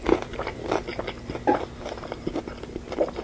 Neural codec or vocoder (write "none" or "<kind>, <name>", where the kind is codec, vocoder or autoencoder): none